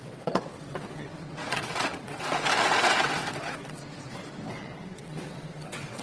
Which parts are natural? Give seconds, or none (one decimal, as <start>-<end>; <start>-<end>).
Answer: 3.8-4.5

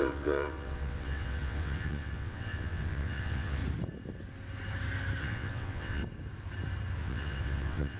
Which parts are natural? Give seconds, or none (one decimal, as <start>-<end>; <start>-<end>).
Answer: 3.6-5.2; 6.0-7.0

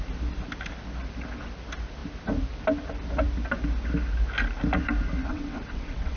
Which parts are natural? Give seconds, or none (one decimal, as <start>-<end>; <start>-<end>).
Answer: 0.0-5.3

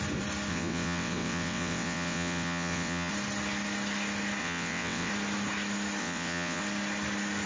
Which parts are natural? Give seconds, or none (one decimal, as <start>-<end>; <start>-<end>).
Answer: 0.0-0.5; 3.1-4.4; 5.1-6.0; 6.6-7.5

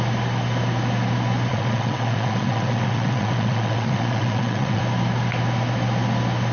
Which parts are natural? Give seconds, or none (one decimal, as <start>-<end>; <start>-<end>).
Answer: 0.0-1.5; 4.8-6.5

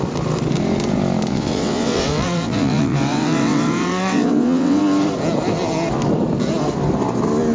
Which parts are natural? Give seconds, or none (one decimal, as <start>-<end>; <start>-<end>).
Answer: 0.0-1.3; 4.8-7.5